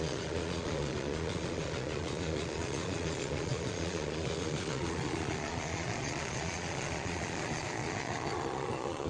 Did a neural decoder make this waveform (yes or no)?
yes